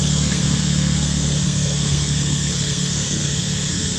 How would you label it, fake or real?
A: fake